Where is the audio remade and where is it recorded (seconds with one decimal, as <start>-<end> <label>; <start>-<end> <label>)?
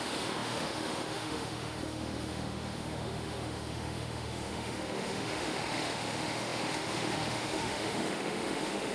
0.0-8.9 remade